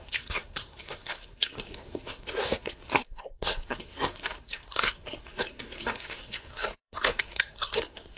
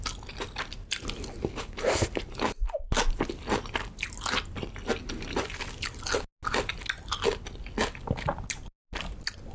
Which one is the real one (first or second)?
second